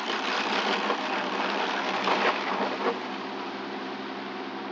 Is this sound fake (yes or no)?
no